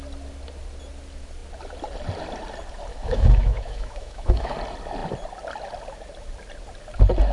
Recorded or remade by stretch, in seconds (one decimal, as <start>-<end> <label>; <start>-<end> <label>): 0.0-2.9 recorded; 2.9-4.5 remade; 4.5-7.3 recorded